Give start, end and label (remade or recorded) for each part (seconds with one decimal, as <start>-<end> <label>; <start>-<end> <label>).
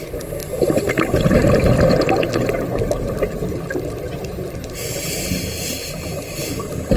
0.0-7.0 recorded